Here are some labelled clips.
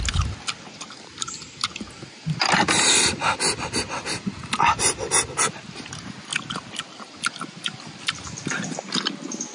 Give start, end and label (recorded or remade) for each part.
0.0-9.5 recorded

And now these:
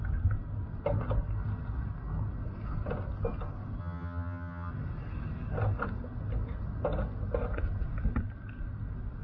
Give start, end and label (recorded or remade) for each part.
0.0-3.8 recorded; 3.8-4.7 remade; 4.7-9.2 recorded

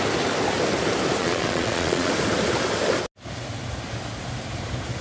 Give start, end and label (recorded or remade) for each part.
0.0-1.2 recorded; 1.2-2.1 remade; 2.1-5.0 recorded

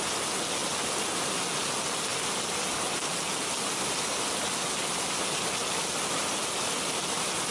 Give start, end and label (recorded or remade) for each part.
0.0-7.5 recorded

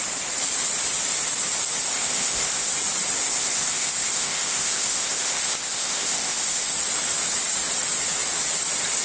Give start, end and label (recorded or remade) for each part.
0.0-1.8 recorded; 1.8-2.7 remade; 2.7-3.2 recorded; 3.2-6.7 remade; 6.7-9.0 recorded

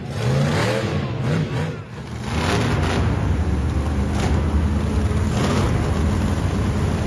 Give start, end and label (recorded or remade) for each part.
0.0-7.1 recorded